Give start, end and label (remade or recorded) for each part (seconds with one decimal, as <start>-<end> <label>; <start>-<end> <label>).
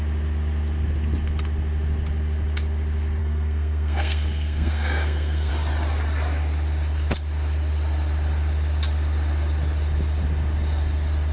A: 0.0-3.2 recorded; 3.2-5.5 remade; 5.5-11.3 recorded